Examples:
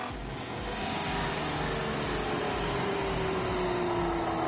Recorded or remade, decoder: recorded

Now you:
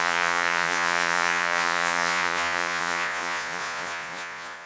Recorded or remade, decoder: remade, vocoder, Vocos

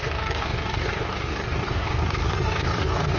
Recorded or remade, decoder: remade, codec, DAC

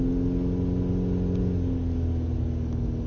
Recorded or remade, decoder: recorded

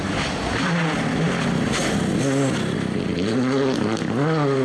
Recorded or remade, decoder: recorded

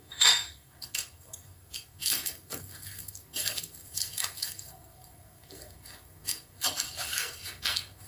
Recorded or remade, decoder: remade, codec, SNAC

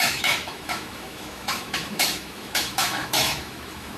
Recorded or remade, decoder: remade, autoencoder, DAC-VAE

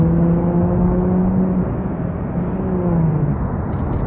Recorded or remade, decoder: recorded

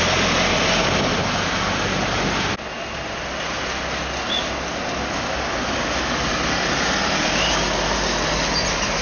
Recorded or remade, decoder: recorded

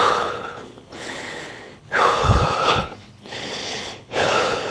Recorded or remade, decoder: remade, codec, HILCodec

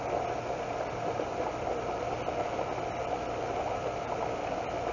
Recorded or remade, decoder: recorded